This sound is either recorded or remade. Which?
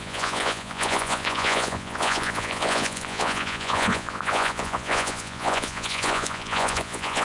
remade